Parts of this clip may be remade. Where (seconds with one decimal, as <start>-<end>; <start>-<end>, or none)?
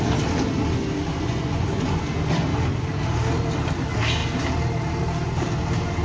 1.1-2.0